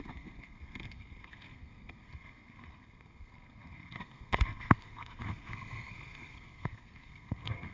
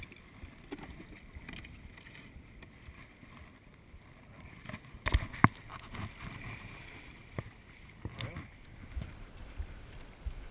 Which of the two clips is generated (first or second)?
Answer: first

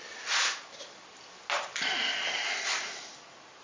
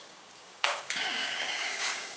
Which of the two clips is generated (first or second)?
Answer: second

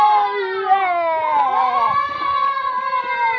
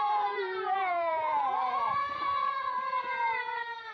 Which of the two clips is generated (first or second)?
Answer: second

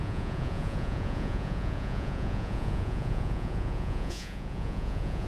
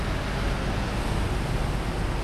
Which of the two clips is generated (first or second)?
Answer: first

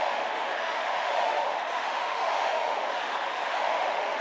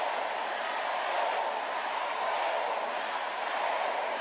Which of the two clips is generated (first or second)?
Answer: first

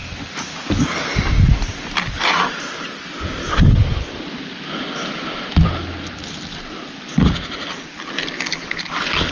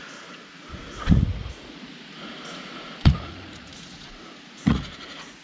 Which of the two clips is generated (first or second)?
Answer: second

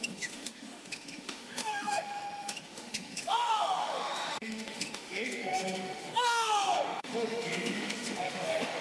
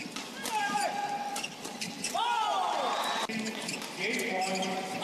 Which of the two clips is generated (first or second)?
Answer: first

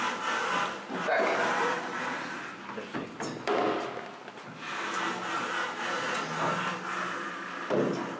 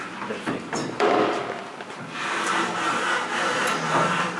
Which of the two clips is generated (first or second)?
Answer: second